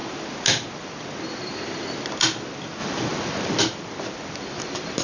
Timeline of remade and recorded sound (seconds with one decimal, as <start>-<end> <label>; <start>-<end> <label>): 0.0-2.8 recorded; 2.8-3.6 remade; 3.6-5.0 recorded